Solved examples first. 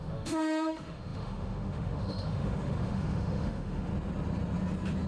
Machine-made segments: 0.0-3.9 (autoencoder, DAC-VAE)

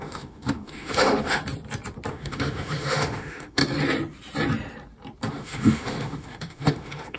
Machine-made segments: 0.0-1.4 (autoencoder, DAC-VAE); 2.1-3.6; 5.3-7.2

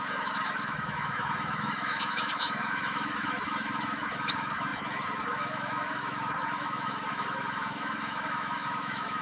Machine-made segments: 0.0-9.2 (autoencoder, DAC-VAE)